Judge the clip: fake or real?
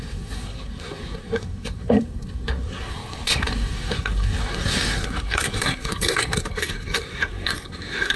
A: fake